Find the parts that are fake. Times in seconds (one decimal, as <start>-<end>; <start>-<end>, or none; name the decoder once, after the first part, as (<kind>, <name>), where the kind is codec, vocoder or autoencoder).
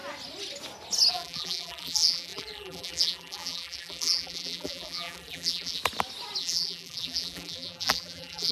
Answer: 1.1-5.8 (vocoder, BigVGAN v2); 6.4-8.5